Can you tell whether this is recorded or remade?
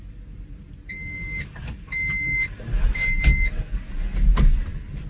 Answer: recorded